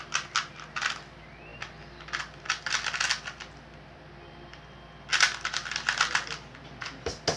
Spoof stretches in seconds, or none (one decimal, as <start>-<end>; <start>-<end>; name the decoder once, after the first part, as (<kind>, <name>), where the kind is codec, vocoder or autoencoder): none